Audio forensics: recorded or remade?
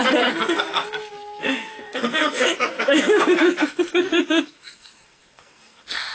remade